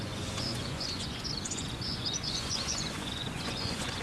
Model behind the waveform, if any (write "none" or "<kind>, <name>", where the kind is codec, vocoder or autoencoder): vocoder, Vocos